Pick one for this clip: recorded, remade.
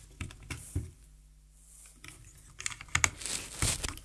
recorded